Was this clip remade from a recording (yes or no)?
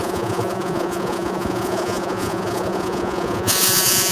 yes